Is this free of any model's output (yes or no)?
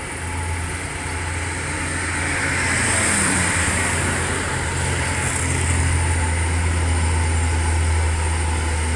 yes